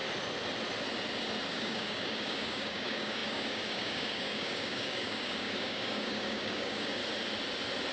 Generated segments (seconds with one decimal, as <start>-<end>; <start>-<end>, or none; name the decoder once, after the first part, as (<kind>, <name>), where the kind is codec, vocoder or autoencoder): 1.5-7.0 (codec, DAC)